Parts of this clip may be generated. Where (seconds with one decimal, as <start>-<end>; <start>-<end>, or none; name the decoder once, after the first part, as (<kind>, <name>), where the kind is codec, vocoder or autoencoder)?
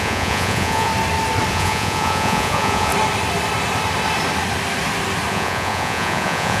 0.0-0.9 (vocoder, Vocos); 1.5-2.9; 5.3-6.6